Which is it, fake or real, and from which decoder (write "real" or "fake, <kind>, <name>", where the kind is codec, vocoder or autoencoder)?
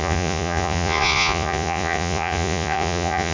fake, vocoder, Vocos